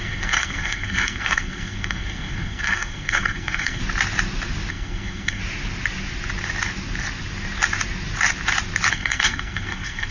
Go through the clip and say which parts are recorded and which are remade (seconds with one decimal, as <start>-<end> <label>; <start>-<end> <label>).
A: 0.0-3.8 remade; 3.8-4.7 recorded; 4.7-5.4 remade; 5.4-8.9 recorded; 8.9-10.1 remade